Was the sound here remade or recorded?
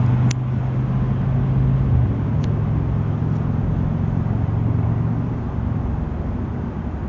recorded